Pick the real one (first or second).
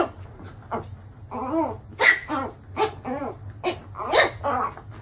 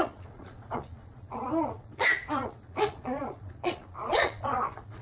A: first